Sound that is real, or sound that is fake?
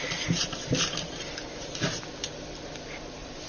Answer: real